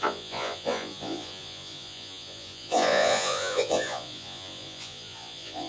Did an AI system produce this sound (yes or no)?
yes